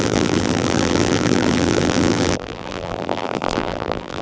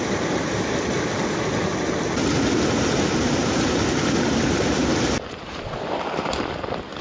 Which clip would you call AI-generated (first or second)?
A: first